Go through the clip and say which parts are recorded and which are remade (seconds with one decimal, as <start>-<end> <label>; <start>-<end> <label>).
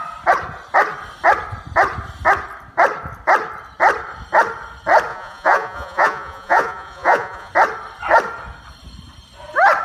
0.0-5.1 recorded; 5.1-7.5 remade; 7.5-9.8 recorded